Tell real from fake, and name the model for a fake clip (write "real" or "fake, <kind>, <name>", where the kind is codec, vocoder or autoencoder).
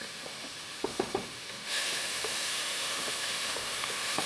fake, autoencoder, DAC-VAE